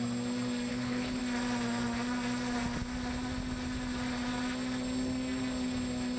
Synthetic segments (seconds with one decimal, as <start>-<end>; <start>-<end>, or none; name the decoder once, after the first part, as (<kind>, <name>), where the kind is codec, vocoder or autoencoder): 0.7-1.2 (codec, HILCodec)